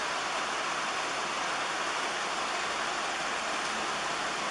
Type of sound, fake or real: real